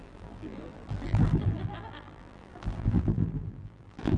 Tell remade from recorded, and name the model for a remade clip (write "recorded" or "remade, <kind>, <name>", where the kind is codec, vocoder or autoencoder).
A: remade, vocoder, BigVGAN v2